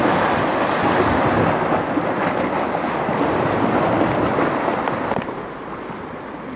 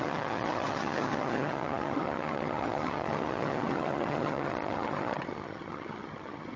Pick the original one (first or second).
first